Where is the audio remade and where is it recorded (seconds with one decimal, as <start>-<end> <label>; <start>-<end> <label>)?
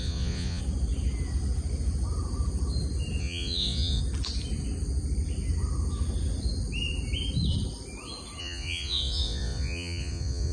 0.0-0.6 remade; 0.6-3.2 recorded; 3.2-4.0 remade; 4.0-8.4 recorded; 8.4-10.5 remade